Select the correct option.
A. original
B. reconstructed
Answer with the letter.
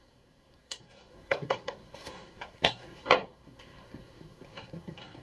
B